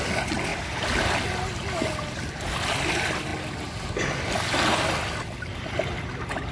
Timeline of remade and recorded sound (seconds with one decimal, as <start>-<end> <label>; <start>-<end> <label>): 0.0-6.5 recorded